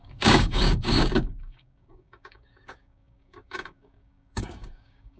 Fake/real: fake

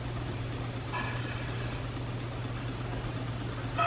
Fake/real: fake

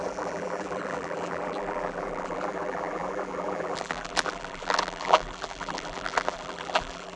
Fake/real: fake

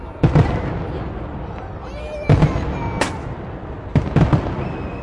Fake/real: real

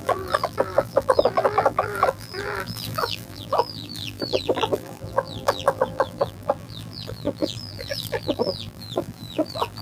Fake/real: fake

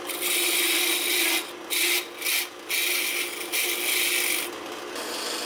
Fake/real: real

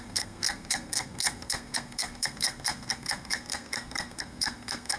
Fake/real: fake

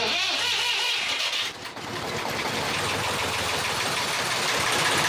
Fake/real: real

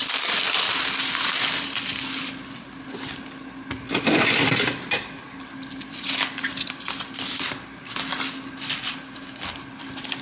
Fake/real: real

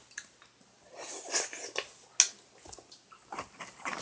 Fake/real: real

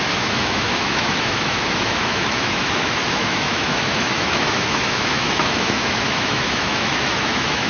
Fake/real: fake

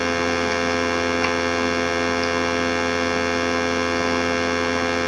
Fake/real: real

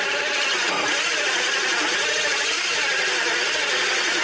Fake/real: real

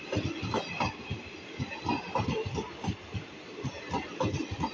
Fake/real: real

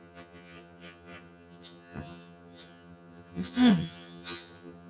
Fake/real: fake